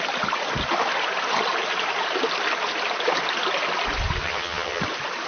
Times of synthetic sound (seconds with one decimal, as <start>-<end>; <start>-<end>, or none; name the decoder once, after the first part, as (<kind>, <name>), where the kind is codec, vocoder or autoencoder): 4.2-4.8 (vocoder, HiFi-GAN)